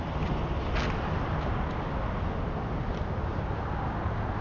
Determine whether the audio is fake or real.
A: real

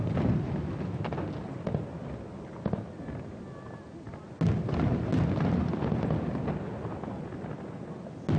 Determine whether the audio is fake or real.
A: real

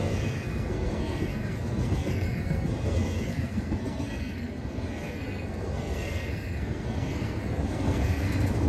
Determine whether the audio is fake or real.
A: fake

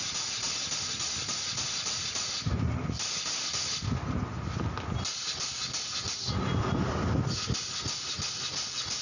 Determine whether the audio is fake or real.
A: real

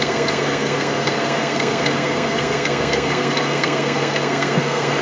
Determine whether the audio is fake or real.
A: fake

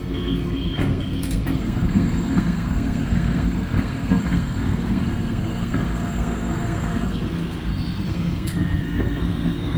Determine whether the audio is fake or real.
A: fake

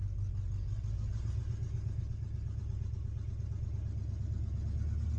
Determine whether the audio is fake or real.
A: real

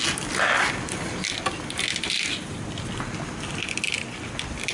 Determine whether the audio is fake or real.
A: real